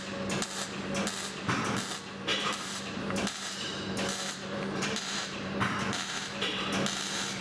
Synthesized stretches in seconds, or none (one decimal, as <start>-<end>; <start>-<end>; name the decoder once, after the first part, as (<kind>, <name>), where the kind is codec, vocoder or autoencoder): 2.3-6.7 (vocoder, BigVGAN v2)